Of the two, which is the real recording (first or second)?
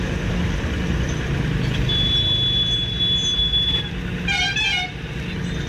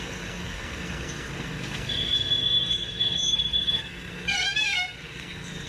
first